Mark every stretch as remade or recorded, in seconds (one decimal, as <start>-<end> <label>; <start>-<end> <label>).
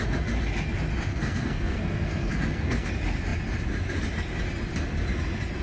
0.0-1.1 recorded; 1.1-2.9 remade; 2.9-5.6 recorded